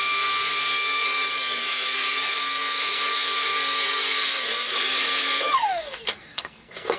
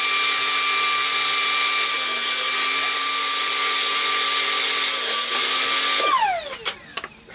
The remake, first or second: first